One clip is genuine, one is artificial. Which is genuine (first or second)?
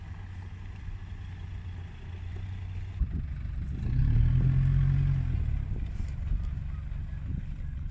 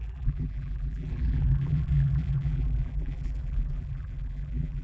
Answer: first